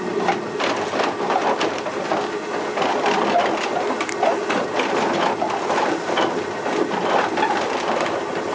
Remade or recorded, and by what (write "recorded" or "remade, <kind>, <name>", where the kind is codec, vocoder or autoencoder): recorded